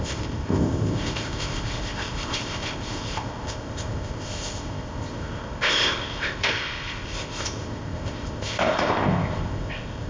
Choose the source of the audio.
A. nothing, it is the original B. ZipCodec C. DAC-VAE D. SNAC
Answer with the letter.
B